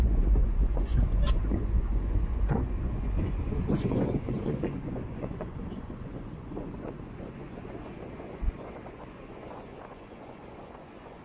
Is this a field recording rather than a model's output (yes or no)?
no